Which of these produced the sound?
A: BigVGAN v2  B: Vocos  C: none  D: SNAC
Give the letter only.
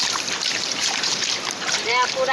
A